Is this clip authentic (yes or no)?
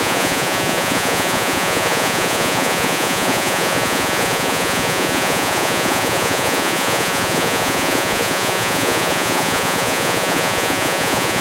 no